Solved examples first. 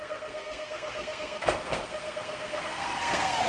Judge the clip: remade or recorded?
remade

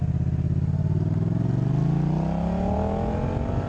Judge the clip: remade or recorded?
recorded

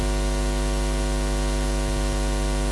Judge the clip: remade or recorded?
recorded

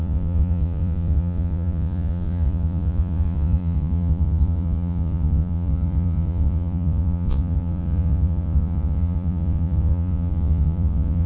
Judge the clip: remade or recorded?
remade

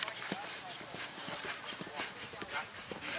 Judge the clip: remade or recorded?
remade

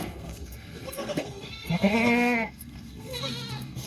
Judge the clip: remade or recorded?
remade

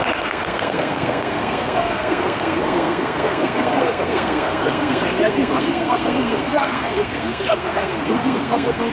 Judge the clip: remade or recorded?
remade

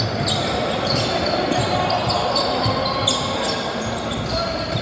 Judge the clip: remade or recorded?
recorded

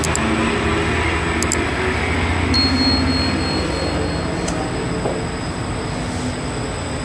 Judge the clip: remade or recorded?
recorded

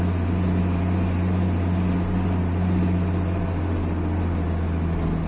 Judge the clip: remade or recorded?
recorded